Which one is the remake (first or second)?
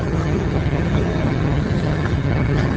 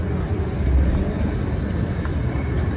first